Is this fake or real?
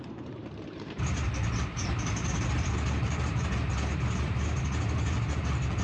fake